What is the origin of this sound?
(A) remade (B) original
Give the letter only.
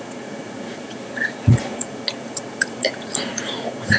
A